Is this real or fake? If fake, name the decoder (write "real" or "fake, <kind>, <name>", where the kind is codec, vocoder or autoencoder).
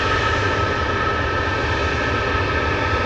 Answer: real